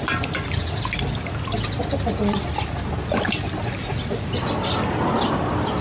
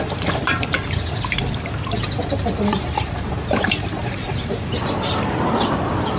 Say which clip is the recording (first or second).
first